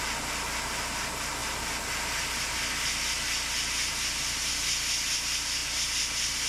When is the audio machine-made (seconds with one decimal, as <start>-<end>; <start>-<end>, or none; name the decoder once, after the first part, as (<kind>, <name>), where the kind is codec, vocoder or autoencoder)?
none